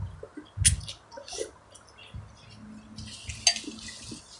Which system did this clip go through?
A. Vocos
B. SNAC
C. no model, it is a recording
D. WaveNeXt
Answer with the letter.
C